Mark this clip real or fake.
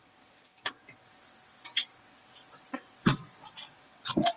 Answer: fake